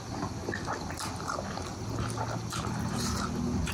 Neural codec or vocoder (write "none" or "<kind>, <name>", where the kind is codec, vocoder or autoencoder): none